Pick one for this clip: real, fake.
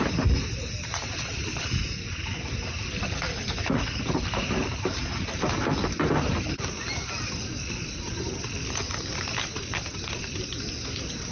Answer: real